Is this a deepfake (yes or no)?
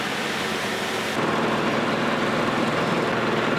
no